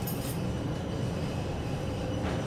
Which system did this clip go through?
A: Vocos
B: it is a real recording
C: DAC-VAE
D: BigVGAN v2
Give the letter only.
B